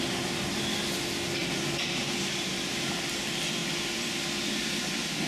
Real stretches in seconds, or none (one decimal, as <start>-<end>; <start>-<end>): 0.0-1.4; 2.5-3.6; 4.8-5.3